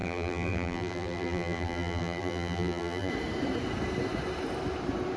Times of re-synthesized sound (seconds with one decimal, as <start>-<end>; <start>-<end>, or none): 0.0-3.1